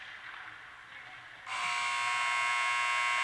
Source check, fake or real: real